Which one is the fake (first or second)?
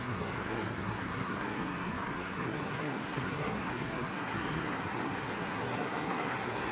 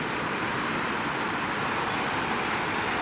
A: first